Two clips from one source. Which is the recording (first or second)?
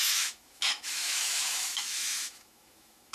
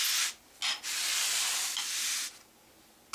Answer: second